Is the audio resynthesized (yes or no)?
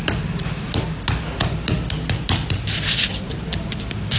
no